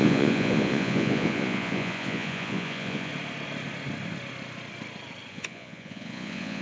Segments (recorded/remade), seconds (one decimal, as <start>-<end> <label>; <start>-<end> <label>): 0.0-3.1 remade; 3.1-5.3 recorded; 5.3-6.6 remade